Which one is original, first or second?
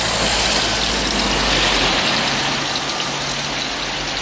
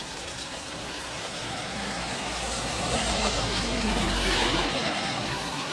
first